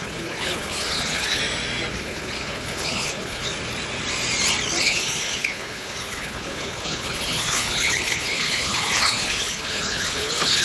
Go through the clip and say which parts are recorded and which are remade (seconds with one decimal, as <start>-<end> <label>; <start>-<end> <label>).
0.0-1.4 remade; 1.4-1.9 recorded; 1.9-3.5 remade; 3.5-4.8 recorded; 4.8-10.6 remade